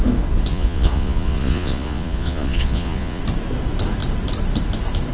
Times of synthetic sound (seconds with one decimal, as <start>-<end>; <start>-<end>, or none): 0.5-3.2